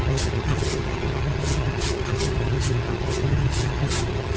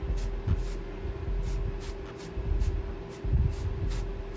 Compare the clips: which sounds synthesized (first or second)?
first